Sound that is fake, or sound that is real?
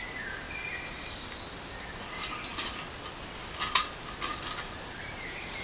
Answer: fake